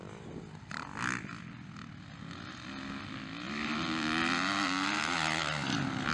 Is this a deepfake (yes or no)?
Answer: no